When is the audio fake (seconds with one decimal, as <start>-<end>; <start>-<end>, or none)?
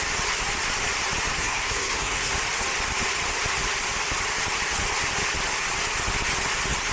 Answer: 1.3-2.3